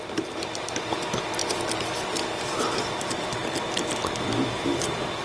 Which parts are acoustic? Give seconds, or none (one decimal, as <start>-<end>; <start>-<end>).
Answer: 1.4-2.6; 3.4-4.5